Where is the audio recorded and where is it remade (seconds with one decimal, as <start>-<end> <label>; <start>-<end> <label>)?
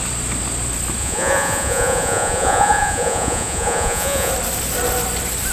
0.0-1.0 recorded; 1.0-4.3 remade; 4.3-5.5 recorded